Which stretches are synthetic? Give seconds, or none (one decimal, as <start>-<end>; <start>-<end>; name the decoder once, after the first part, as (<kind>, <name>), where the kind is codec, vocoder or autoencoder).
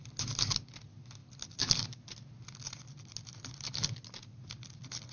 none